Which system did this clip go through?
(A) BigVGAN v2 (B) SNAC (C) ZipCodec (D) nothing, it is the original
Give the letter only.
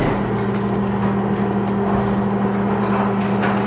D